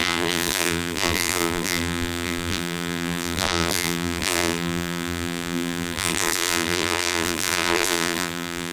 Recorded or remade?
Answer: remade